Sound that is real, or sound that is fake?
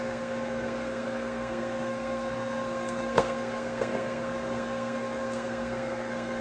fake